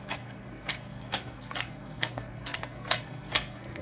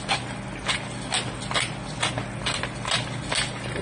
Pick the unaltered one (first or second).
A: second